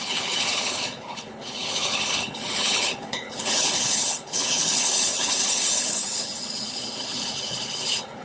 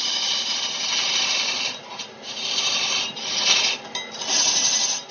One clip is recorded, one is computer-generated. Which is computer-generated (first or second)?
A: first